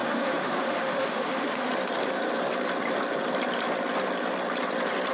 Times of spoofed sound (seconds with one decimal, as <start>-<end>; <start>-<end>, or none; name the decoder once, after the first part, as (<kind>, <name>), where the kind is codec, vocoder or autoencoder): 0.0-1.7 (autoencoder, DAC-VAE)